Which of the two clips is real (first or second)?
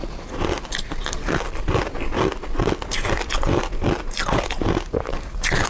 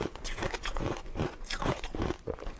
first